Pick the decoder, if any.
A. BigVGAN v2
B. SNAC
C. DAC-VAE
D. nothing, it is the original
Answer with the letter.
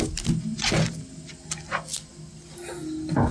D